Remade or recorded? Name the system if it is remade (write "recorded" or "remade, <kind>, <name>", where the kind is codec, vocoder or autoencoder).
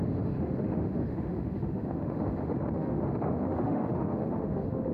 remade, autoencoder, DAC-VAE